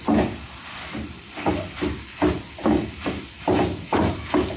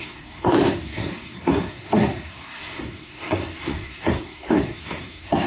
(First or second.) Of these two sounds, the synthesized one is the second